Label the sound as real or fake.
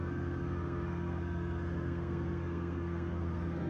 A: fake